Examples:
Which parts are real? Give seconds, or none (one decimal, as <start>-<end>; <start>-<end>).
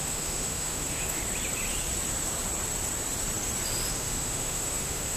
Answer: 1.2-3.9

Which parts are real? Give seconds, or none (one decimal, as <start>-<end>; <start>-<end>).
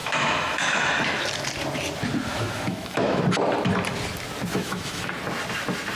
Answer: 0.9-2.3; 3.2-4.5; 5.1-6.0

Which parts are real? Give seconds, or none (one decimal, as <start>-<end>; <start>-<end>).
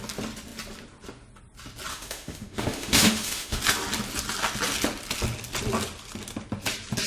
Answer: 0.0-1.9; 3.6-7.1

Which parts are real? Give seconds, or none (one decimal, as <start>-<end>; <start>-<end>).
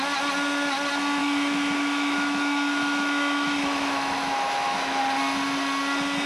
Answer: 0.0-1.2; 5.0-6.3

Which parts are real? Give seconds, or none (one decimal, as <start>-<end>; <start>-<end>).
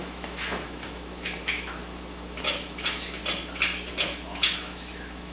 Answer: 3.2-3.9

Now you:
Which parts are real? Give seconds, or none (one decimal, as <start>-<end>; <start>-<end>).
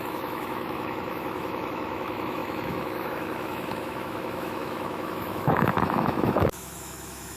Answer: none